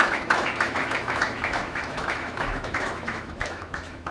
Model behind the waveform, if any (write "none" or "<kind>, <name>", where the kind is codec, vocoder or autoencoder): autoencoder, DAC-VAE